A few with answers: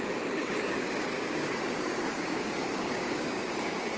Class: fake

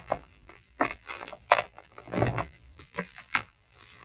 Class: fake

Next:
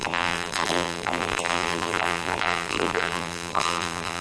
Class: fake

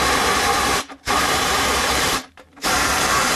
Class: fake